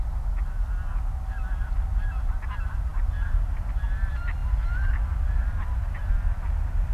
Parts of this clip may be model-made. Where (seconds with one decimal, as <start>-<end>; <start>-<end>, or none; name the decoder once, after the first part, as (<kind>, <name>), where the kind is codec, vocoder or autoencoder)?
none